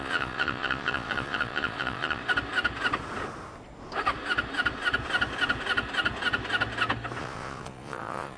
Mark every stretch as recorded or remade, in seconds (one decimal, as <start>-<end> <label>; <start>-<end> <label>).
0.0-2.2 remade; 2.2-7.2 recorded; 7.2-8.4 remade